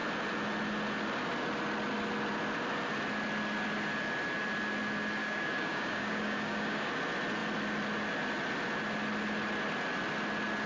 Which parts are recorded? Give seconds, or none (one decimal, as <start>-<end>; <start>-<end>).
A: 0.0-5.2; 6.9-10.7